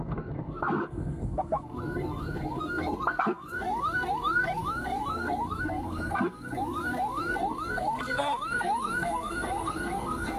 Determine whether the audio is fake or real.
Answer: fake